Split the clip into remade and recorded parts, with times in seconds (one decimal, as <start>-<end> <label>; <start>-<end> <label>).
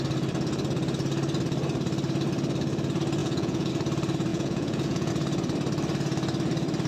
0.0-3.2 recorded; 3.2-3.7 remade; 3.7-4.3 recorded; 4.3-5.1 remade; 5.1-6.9 recorded